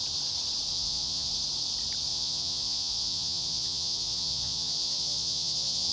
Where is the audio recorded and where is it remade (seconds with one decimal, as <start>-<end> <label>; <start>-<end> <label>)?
0.0-0.7 recorded; 0.7-1.3 remade; 1.3-2.1 recorded; 2.1-5.9 remade